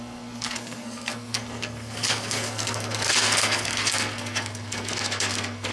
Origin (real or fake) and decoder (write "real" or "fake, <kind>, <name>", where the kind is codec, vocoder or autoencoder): fake, codec, SNAC